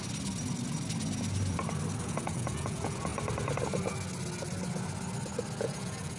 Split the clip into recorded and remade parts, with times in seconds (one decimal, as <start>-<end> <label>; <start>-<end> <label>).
0.0-2.0 recorded; 2.0-3.1 remade; 3.1-5.6 recorded; 5.6-6.2 remade

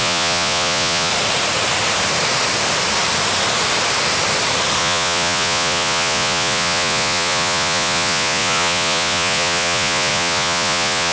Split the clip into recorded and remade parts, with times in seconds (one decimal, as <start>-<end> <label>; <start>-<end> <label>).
0.0-1.1 remade; 1.1-4.8 recorded; 4.8-11.1 remade

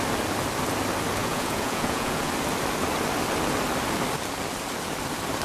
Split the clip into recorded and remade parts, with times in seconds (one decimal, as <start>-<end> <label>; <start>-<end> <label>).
0.0-1.2 recorded; 1.2-2.3 remade; 2.3-5.4 recorded

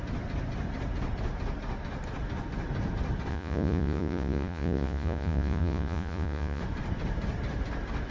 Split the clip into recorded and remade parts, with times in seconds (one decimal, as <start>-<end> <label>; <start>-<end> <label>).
0.0-3.3 recorded; 3.3-6.6 remade; 6.6-8.1 recorded

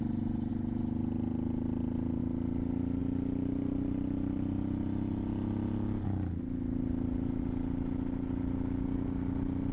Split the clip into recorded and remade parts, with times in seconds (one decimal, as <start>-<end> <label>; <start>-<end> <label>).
0.0-9.7 recorded

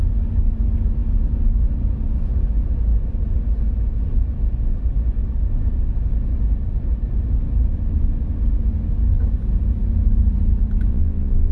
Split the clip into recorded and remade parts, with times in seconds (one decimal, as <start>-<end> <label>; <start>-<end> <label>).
0.0-10.9 recorded; 10.9-11.5 remade

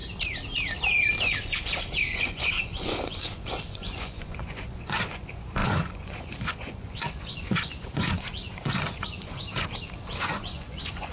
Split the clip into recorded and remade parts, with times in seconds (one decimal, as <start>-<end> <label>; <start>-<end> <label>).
0.0-1.2 recorded; 1.2-9.7 remade; 9.7-10.2 recorded; 10.2-11.1 remade